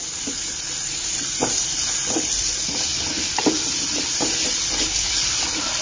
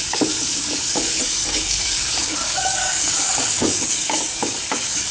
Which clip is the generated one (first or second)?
second